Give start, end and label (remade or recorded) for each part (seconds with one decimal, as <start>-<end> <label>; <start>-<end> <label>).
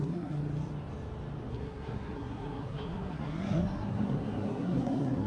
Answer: 0.0-0.4 remade; 0.4-1.5 recorded; 1.5-5.3 remade